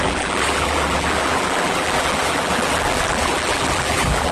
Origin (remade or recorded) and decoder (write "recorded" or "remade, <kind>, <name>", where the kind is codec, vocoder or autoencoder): remade, vocoder, BigVGAN v2